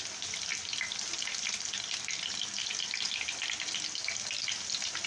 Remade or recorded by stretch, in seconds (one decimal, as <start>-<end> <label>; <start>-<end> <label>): 0.0-5.1 recorded